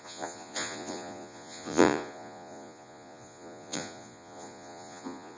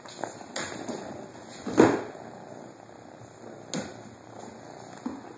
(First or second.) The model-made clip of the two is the first